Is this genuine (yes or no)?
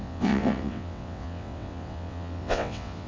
no